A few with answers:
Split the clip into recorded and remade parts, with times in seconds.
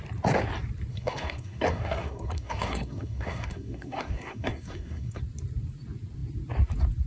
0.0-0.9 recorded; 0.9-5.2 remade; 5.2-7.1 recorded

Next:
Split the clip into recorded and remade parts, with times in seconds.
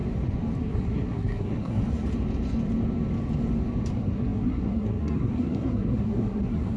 0.0-0.6 recorded; 0.6-1.8 remade; 1.8-3.9 recorded; 3.9-6.8 remade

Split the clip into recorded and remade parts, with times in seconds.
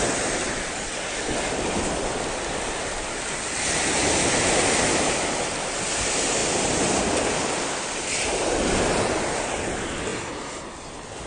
0.0-11.3 recorded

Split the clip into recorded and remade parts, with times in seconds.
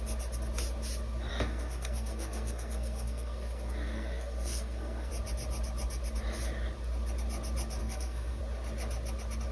0.0-1.3 recorded; 1.3-5.1 remade; 5.1-7.8 recorded; 7.8-8.4 remade; 8.4-9.5 recorded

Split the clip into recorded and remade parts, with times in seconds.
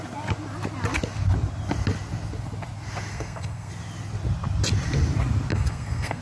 0.0-3.1 recorded; 3.1-3.7 remade; 3.7-5.5 recorded; 5.5-6.2 remade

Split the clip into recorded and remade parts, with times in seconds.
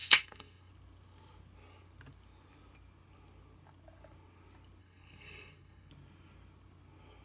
0.0-0.7 remade; 0.7-4.8 recorded; 4.8-5.9 remade; 5.9-7.2 recorded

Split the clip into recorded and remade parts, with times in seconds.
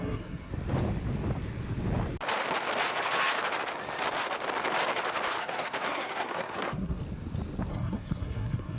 0.0-0.5 remade; 0.5-5.4 recorded; 5.4-7.0 remade; 7.0-7.7 recorded; 7.7-8.8 remade